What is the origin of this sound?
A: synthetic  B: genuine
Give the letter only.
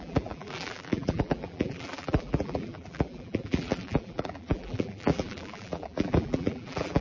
A